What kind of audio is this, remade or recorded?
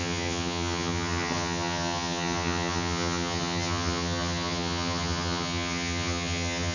remade